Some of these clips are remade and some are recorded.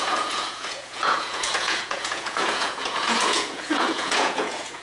remade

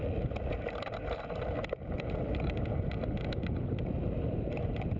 remade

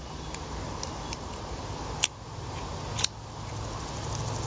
recorded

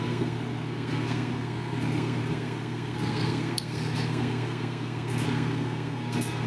remade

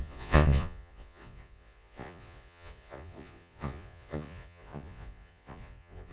remade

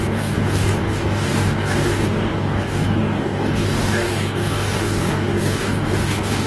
remade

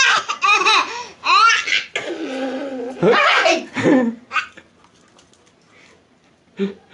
recorded